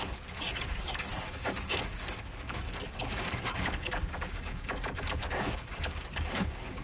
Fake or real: fake